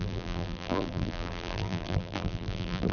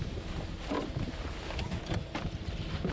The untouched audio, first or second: second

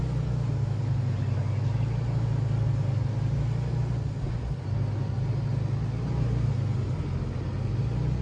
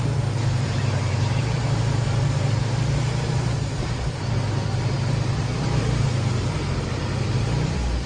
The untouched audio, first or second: first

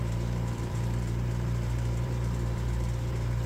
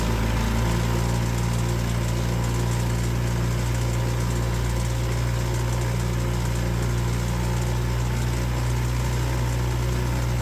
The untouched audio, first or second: second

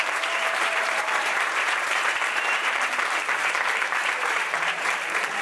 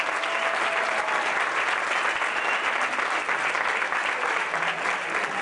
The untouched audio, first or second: second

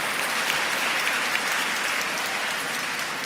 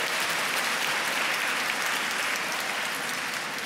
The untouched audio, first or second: second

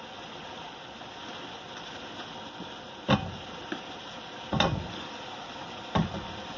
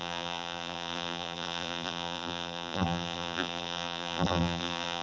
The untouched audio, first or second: first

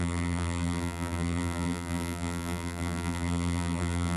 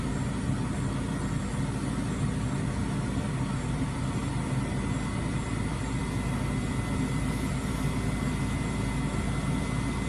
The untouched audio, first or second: second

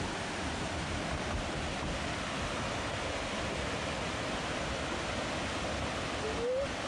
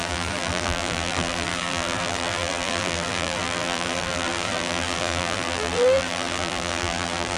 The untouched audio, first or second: first